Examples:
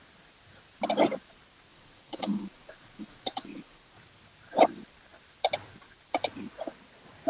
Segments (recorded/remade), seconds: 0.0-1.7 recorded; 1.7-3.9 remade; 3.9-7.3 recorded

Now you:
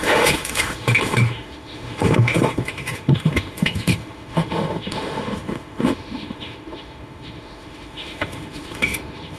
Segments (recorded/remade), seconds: 0.0-9.4 remade

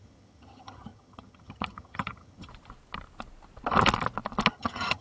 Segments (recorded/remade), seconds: 0.0-2.5 remade; 2.5-4.5 recorded; 4.5-5.0 remade

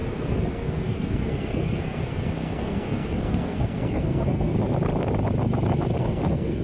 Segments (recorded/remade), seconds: 0.0-4.5 remade; 4.5-6.0 recorded; 6.0-6.6 remade

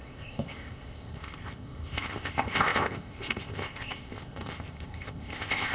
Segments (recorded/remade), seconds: 0.0-5.7 remade

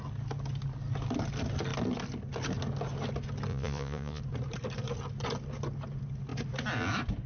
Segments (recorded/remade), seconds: 0.0-3.5 recorded; 3.5-4.2 remade; 4.2-7.3 recorded

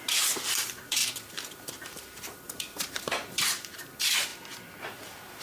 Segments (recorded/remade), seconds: 0.0-4.3 remade; 4.3-4.8 recorded; 4.8-5.4 remade